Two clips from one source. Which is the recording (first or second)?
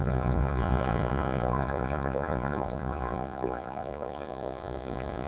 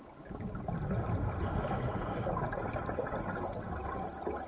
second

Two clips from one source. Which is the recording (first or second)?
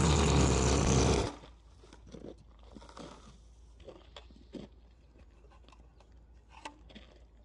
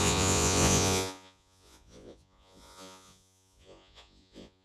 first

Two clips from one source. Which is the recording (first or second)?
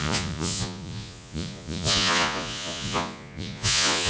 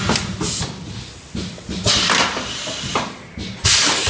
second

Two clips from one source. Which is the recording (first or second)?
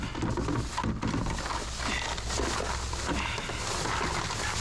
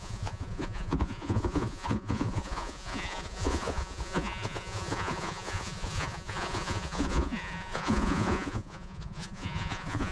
first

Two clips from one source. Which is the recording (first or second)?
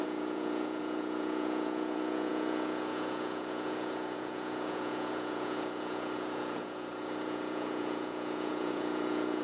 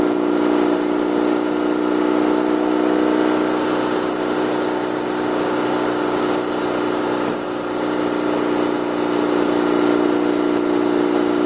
second